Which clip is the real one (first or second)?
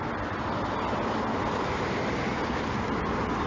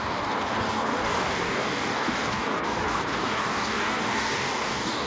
first